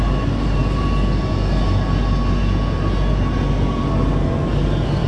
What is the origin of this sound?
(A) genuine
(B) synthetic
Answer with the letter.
A